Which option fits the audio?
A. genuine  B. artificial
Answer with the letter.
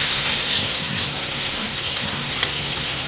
B